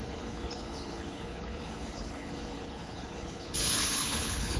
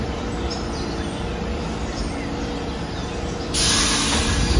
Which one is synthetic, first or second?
first